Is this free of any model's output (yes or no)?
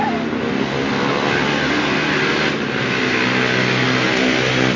yes